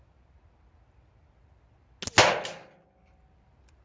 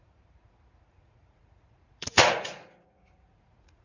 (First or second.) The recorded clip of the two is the first